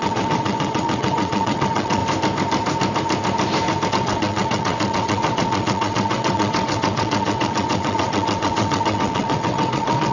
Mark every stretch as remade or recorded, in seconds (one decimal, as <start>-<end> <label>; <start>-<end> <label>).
0.0-2.0 remade; 2.0-3.9 recorded; 3.9-10.1 remade

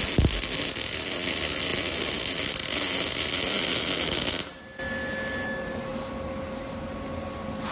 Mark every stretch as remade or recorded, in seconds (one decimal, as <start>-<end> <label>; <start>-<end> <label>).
0.0-7.7 recorded

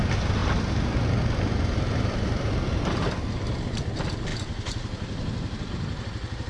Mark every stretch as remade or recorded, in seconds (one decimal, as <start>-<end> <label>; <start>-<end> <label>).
0.0-6.5 recorded

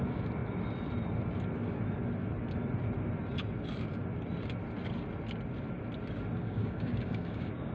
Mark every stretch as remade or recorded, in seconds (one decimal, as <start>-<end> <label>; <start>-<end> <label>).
0.0-6.4 recorded; 6.4-7.7 remade

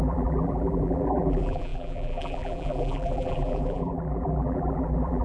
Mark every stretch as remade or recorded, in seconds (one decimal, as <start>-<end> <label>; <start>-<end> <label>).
0.0-5.2 remade

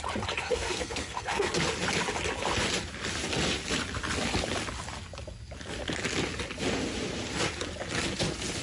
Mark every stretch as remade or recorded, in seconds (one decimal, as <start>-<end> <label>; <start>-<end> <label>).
0.0-0.4 recorded; 0.4-1.5 remade; 1.5-8.6 recorded

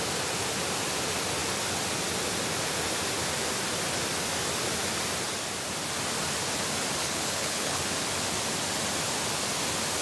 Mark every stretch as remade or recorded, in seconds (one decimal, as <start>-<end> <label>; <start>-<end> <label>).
0.0-7.0 recorded; 7.0-7.8 remade; 7.8-10.0 recorded

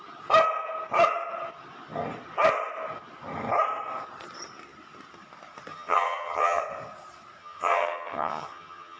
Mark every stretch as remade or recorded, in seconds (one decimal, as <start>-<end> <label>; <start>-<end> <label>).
0.0-5.7 recorded; 5.7-6.6 remade; 6.6-7.4 recorded; 7.4-9.0 remade